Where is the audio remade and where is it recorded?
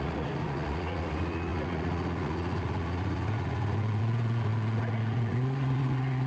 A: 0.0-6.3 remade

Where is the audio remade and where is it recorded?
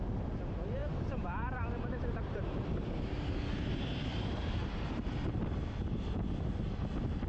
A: 0.0-0.8 recorded; 0.8-5.2 remade; 5.2-7.3 recorded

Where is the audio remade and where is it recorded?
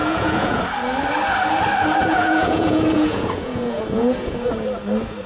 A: 0.0-0.6 remade; 0.6-2.0 recorded; 2.0-4.5 remade; 4.5-5.3 recorded